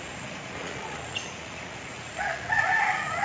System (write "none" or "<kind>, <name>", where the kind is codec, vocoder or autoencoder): vocoder, Vocos